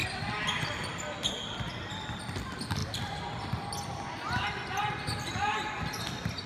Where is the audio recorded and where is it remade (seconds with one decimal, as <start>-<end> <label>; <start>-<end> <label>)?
0.0-6.5 recorded